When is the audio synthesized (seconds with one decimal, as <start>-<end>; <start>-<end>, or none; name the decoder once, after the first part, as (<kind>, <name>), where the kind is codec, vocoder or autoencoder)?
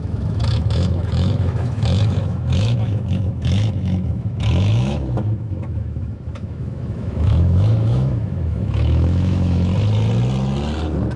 0.0-9.7 (autoencoder, DAC-VAE)